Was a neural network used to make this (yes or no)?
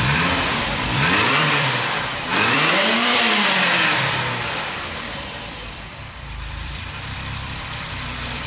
yes